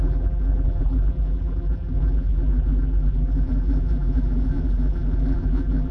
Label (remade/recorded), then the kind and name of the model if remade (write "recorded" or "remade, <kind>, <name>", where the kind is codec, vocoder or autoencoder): remade, vocoder, BigVGAN v2